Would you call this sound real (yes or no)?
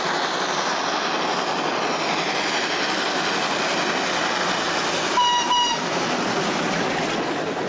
yes